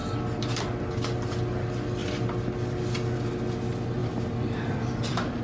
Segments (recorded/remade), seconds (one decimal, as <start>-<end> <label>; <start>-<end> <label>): 0.0-4.0 recorded; 4.0-5.4 remade